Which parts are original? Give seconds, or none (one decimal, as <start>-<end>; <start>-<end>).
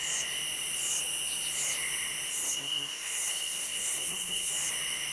0.0-2.3; 4.5-5.1